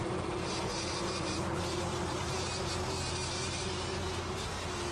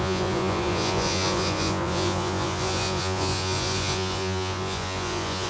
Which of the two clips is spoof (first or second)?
second